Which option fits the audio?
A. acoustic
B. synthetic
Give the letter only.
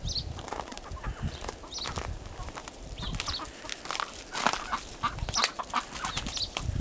A